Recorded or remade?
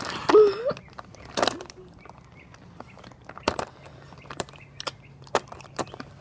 remade